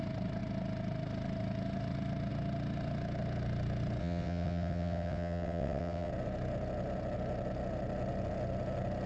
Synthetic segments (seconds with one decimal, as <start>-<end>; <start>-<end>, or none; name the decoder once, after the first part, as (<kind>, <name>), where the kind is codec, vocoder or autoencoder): 4.0-6.1 (vocoder, WaveNeXt)